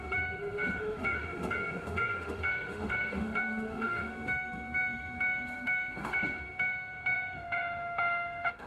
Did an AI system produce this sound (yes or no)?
yes